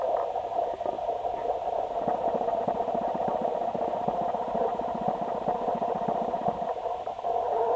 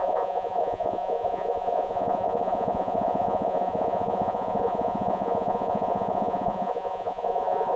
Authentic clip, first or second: first